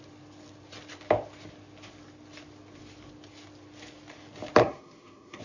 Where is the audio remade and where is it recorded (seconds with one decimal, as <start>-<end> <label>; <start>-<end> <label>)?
0.0-4.6 recorded; 4.6-5.4 remade